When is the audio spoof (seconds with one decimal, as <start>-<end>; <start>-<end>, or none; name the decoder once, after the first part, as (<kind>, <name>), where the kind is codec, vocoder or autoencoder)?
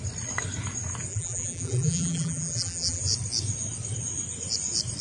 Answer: 1.1-3.0 (vocoder, BigVGAN v2)